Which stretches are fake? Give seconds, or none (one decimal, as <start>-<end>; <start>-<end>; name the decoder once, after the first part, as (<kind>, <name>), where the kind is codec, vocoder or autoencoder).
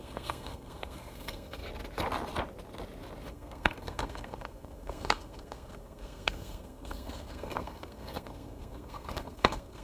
0.0-1.6 (codec, SNAC); 3.3-9.8